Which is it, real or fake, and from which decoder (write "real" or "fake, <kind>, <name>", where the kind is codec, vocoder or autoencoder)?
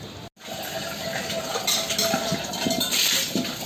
real